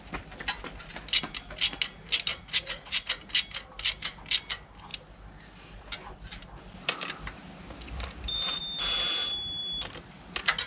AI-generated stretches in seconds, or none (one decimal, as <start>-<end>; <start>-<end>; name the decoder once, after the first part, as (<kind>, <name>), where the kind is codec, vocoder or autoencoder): 2.3-3.2 (vocoder, Vocos)